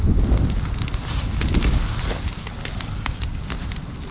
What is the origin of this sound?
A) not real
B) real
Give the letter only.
B